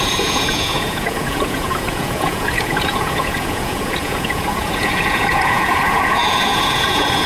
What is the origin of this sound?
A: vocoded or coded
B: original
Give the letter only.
A